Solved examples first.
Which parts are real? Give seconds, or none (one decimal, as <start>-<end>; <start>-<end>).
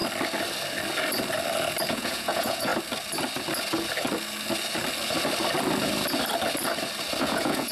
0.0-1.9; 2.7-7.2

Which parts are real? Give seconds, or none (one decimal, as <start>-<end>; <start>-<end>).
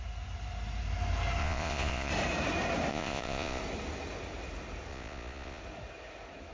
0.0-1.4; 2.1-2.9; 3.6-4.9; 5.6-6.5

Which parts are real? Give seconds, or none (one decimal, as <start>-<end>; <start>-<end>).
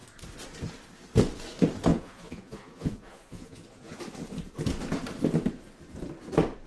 0.0-1.9; 4.0-6.7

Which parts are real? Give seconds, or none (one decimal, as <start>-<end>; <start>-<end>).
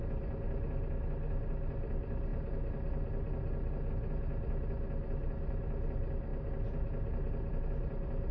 0.0-8.3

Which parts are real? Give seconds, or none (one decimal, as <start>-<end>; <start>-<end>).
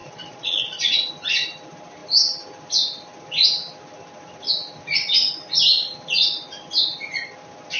1.1-7.8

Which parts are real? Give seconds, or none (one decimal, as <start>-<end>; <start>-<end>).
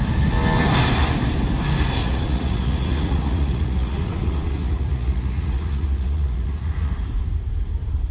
0.0-2.0; 6.9-8.1